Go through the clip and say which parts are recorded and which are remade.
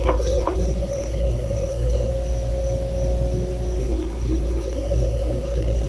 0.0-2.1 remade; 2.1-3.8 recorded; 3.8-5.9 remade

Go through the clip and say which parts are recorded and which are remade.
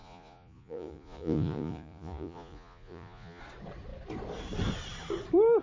0.0-3.4 remade; 3.4-5.6 recorded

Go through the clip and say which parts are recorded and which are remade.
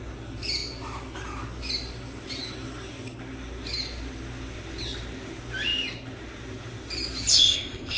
0.0-7.3 recorded; 7.3-8.0 remade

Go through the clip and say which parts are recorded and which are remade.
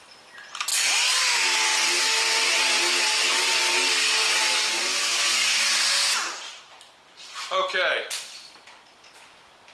0.0-9.7 recorded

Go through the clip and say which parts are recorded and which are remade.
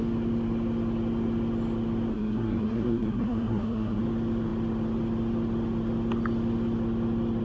0.0-2.1 recorded; 2.1-4.0 remade; 4.0-7.4 recorded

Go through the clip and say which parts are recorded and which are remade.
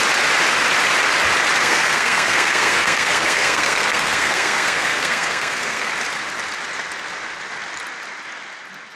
0.0-1.6 recorded; 1.6-5.9 remade; 5.9-9.0 recorded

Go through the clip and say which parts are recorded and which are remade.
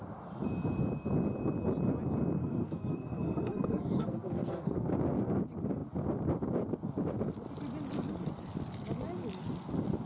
0.0-2.4 recorded; 2.4-4.9 remade; 4.9-10.1 recorded